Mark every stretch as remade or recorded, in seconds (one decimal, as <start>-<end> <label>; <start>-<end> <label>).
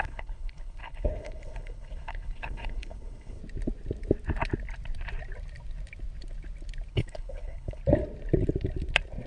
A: 0.0-3.4 remade; 3.4-6.9 recorded; 6.9-7.8 remade; 7.8-9.3 recorded